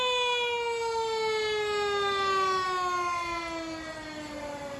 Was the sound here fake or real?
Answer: real